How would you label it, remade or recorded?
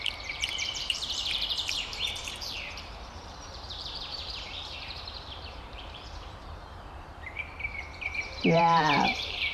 remade